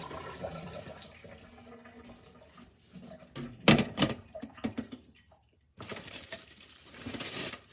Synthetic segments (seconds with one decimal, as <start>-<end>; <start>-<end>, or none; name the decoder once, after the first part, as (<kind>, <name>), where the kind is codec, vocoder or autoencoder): 0.0-1.2 (vocoder, BigVGAN v2); 3.7-7.7